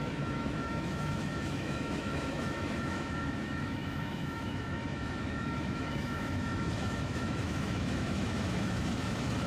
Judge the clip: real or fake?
fake